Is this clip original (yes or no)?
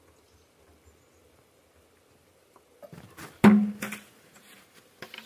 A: yes